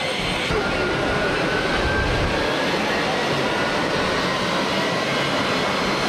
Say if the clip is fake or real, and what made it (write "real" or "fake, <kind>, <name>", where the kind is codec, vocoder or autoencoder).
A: real